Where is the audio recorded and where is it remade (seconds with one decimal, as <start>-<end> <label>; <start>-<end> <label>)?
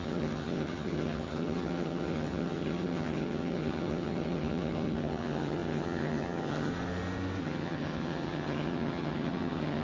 0.0-6.7 remade; 6.7-7.4 recorded; 7.4-9.8 remade